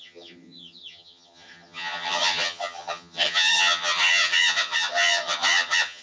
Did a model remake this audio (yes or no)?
yes